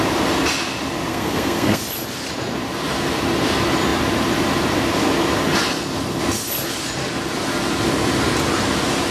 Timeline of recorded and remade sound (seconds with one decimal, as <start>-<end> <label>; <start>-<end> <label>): 0.0-1.1 recorded; 1.1-1.8 remade; 1.8-9.1 recorded